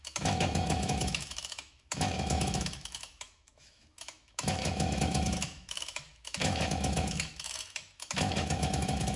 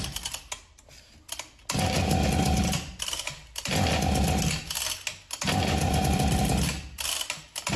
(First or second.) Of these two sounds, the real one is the second